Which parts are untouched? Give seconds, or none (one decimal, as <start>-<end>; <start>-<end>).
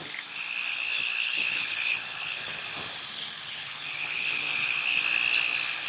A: 0.0-0.7; 2.6-3.4; 5.0-5.9